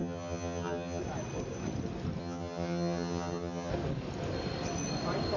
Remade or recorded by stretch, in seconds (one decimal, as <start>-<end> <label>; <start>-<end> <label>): 0.0-1.0 remade; 1.0-2.2 recorded; 2.2-3.7 remade; 3.7-5.4 recorded